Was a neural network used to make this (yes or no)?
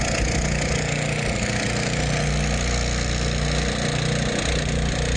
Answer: no